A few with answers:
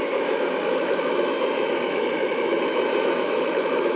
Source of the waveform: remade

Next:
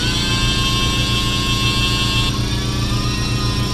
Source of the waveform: recorded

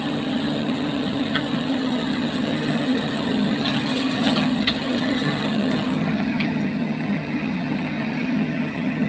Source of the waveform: remade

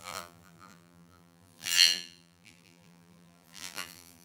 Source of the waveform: remade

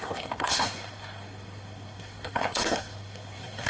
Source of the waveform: remade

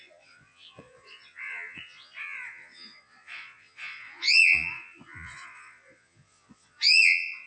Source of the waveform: remade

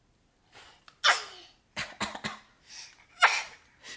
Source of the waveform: recorded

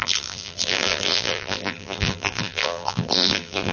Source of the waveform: remade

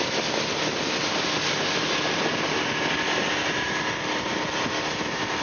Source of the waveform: recorded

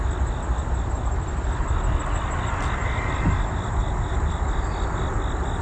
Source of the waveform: recorded